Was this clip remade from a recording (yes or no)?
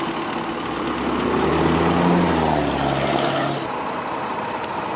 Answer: no